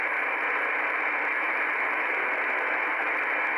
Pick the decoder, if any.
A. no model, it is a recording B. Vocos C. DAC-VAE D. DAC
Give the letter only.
A